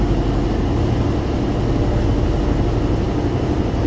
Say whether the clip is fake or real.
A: real